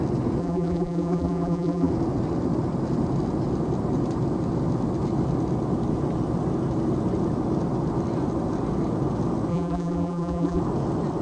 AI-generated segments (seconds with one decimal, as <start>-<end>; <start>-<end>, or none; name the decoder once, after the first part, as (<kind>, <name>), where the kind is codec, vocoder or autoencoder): 0.4-1.9 (vocoder, BigVGAN v2); 9.5-10.6